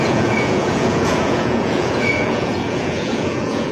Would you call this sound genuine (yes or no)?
no